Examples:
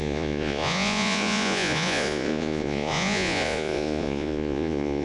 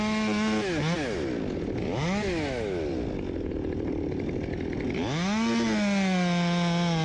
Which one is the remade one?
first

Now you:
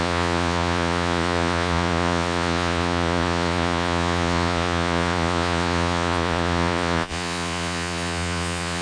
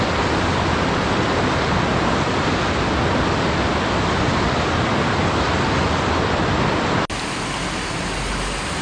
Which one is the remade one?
first